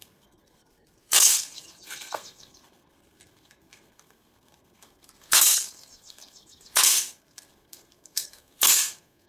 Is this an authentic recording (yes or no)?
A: no